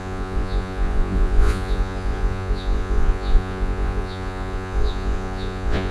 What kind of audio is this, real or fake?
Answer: fake